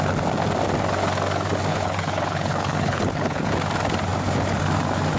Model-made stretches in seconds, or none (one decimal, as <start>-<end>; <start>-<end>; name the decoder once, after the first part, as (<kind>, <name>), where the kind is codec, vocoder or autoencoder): 1.7-3.5 (codec, HILCodec)

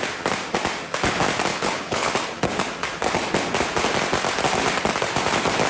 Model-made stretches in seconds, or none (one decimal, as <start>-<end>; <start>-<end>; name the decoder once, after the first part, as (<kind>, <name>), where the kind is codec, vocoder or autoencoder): 1.5-2.1 (codec, HILCodec)